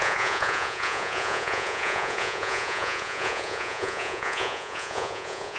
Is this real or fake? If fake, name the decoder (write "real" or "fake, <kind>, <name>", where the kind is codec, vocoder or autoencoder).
fake, vocoder, Vocos